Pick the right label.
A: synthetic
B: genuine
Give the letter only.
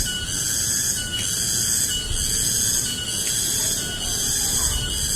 B